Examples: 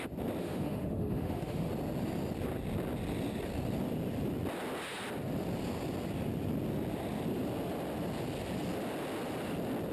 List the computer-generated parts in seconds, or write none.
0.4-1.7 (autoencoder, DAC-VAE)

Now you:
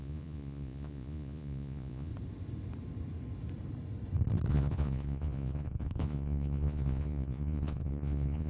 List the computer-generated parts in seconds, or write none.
0.0-2.1 (vocoder, Vocos); 4.5-8.5

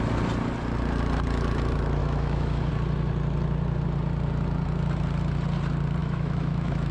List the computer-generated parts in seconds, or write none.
2.0-2.7 (autoencoder, DAC-VAE); 6.0-6.9

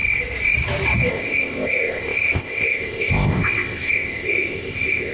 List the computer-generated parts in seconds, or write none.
1.1-5.1 (codec, ZipCodec)

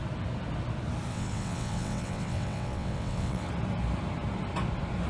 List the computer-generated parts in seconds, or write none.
1.1-3.5 (vocoder, WaveNeXt)